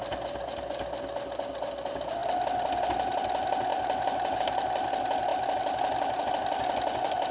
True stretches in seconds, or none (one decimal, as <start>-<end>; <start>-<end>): 0.0-3.7; 4.4-7.3